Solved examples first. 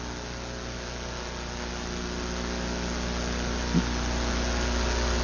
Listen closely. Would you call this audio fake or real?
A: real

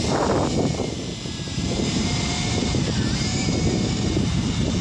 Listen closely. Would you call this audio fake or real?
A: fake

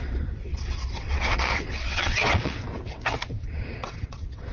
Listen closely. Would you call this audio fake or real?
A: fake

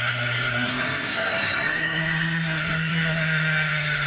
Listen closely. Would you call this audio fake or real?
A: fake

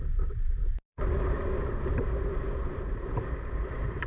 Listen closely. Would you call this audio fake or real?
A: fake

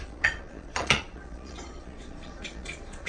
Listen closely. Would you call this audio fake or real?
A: fake